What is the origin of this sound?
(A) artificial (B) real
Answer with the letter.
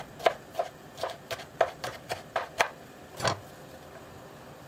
B